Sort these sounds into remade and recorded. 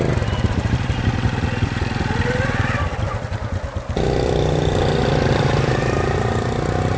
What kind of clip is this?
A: remade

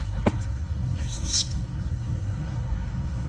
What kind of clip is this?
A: remade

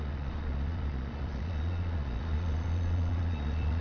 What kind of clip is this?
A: remade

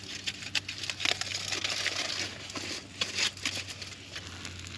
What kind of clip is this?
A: recorded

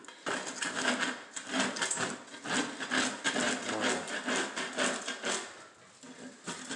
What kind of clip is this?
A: recorded